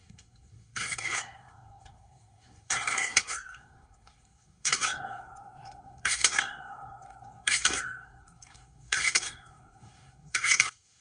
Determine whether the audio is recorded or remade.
remade